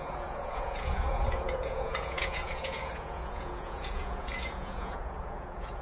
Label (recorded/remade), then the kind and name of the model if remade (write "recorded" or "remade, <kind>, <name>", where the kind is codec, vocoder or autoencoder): remade, vocoder, Vocos